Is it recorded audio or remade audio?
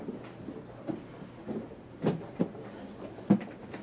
recorded